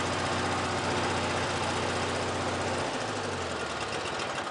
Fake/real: real